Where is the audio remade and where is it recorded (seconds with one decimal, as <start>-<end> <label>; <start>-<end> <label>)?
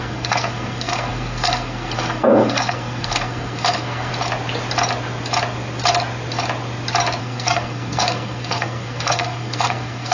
0.0-4.1 remade; 4.1-7.2 recorded; 7.2-10.1 remade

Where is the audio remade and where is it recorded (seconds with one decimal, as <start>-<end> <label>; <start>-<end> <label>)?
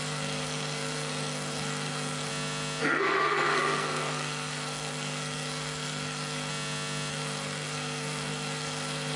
0.0-2.3 remade; 2.3-2.8 recorded; 2.8-6.5 remade; 6.5-7.1 recorded; 7.1-9.2 remade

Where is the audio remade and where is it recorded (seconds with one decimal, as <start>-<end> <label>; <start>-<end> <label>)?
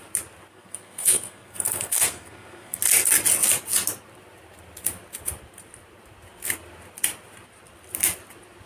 0.0-0.5 recorded; 0.5-2.8 remade; 2.8-8.7 recorded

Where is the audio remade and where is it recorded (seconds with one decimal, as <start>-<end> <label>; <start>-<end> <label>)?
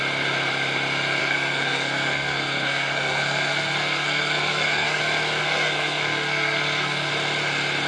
0.0-1.2 recorded; 1.2-5.0 remade; 5.0-5.4 recorded; 5.4-7.1 remade; 7.1-7.9 recorded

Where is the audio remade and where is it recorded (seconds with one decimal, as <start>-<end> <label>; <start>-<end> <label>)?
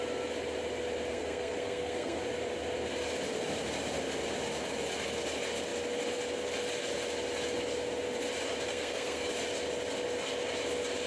0.0-1.1 recorded; 1.1-2.2 remade; 2.2-8.7 recorded; 8.7-9.3 remade; 9.3-11.1 recorded